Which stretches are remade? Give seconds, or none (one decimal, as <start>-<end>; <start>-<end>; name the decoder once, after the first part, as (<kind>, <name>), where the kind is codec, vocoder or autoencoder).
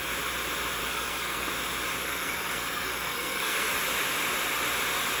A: 0.8-1.5 (codec, SNAC); 2.0-3.7